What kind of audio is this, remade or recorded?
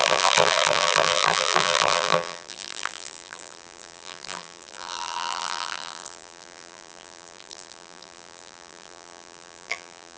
remade